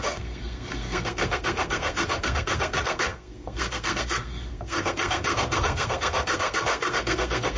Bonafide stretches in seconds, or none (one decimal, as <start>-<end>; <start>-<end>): none